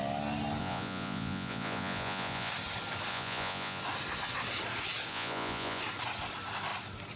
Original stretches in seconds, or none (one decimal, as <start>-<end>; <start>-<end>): 0.0-0.6; 2.5-3.1; 3.8-5.1; 5.8-7.2